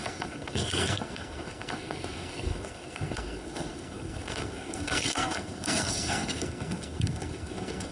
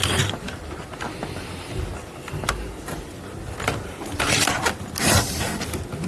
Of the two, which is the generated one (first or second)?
first